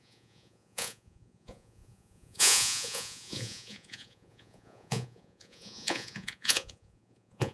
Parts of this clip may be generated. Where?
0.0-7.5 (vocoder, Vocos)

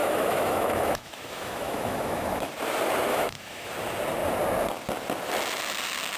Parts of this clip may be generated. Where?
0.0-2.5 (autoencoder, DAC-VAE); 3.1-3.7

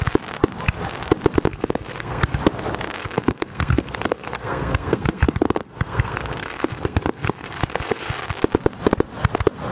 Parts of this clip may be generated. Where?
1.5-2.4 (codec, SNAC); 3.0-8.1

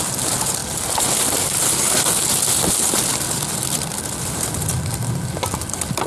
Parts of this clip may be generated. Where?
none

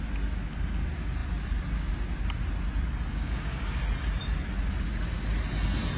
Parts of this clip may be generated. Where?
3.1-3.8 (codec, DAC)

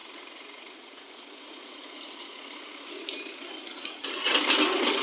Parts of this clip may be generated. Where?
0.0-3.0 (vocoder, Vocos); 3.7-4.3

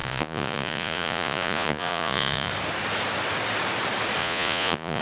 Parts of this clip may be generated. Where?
0.0-2.5 (vocoder, Vocos); 4.2-5.0

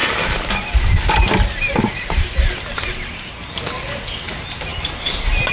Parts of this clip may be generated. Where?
none